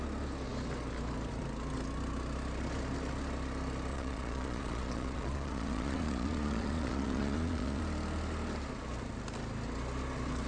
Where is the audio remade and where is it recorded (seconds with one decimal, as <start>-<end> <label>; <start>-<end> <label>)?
0.0-3.9 recorded; 3.9-7.8 remade; 7.8-10.5 recorded